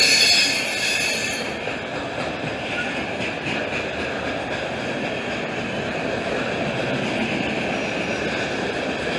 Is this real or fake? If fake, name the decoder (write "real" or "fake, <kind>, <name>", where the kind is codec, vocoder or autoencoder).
real